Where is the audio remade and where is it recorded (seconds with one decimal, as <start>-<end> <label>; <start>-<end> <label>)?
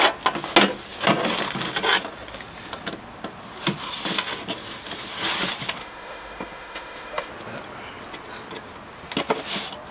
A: 0.0-5.8 recorded; 5.8-7.3 remade; 7.3-9.9 recorded